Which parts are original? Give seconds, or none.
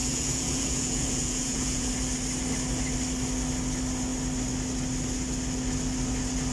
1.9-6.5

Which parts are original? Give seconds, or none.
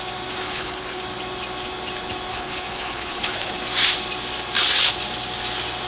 0.0-0.4; 1.0-2.3; 3.5-5.9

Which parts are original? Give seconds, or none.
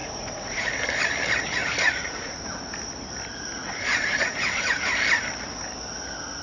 0.7-1.6; 2.6-3.6; 4.9-6.4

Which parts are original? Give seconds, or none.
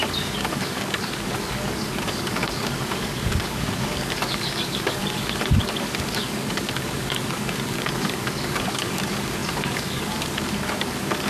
none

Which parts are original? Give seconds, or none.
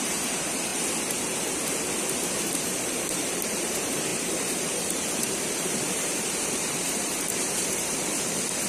0.7-2.4